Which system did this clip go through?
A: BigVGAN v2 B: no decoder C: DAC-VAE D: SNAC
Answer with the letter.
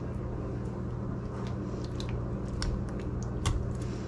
B